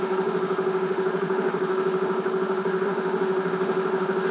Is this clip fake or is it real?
fake